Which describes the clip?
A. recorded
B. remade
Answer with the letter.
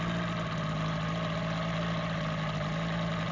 A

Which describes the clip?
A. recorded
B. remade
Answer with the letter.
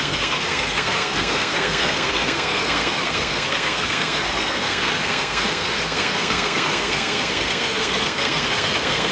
B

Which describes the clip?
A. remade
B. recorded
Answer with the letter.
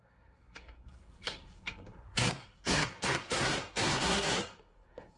A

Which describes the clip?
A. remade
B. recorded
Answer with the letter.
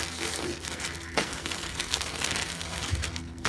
A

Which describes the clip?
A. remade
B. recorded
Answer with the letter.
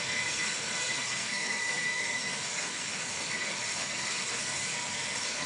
A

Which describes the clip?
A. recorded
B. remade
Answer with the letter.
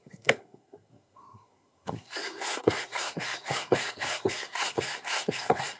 B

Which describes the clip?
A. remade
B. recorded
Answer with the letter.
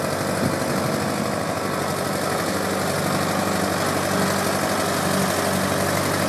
B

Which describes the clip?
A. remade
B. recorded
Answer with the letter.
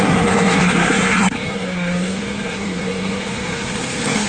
A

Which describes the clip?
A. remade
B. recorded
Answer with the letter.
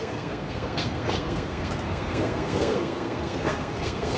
A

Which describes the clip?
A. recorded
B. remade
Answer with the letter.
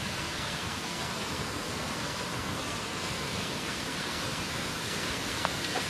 B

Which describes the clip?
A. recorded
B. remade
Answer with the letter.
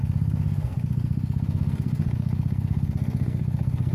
B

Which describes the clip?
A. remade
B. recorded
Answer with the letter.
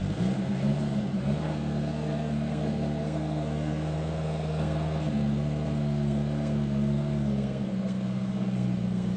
A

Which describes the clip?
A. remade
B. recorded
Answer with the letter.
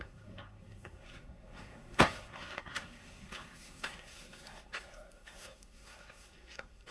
A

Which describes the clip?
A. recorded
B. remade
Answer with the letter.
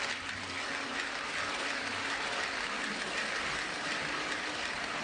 A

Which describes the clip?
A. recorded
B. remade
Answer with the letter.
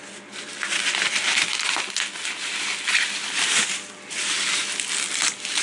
A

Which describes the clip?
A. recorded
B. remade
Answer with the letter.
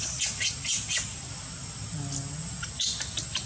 A